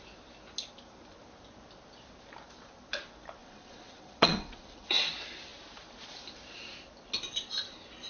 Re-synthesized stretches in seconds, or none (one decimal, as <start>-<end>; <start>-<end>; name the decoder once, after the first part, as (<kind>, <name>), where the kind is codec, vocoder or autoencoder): 3.4-5.1 (vocoder, WaveNeXt)